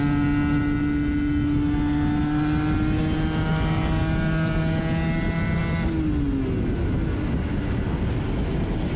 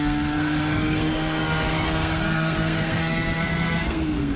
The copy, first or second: second